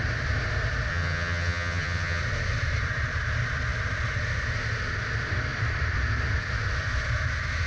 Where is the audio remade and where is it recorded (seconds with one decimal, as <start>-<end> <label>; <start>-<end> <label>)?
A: 0.0-0.9 recorded; 0.9-2.2 remade; 2.2-7.7 recorded